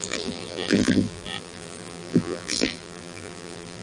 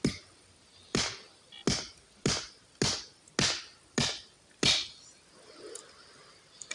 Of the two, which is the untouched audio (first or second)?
second